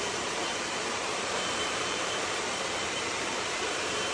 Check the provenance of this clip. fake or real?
fake